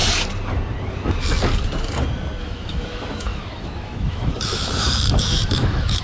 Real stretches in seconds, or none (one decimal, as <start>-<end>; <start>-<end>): 0.0-2.4